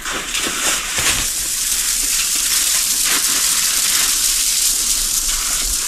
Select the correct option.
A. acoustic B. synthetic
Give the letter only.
B